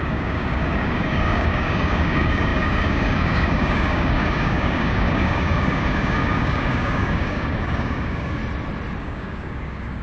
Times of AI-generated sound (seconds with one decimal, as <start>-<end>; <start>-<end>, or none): 0.0-8.4; 9.0-10.0